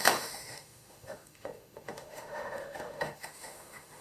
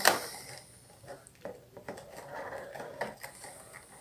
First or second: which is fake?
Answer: first